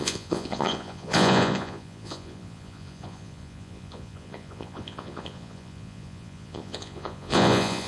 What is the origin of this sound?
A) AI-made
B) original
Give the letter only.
A